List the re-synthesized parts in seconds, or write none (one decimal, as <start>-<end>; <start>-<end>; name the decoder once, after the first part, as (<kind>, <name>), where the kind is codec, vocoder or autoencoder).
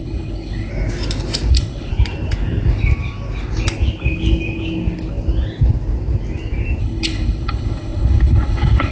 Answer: 0.0-0.7 (codec, HILCodec); 1.5-1.9; 6.8-8.9